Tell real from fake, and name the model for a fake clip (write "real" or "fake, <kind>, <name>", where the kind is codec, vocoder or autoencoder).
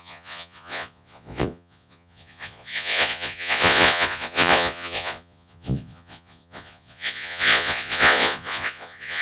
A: fake, vocoder, Vocos